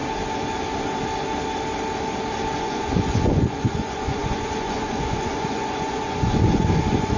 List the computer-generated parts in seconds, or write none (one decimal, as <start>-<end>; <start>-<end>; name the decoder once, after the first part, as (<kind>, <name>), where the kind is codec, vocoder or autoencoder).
2.6-7.2 (vocoder, Vocos)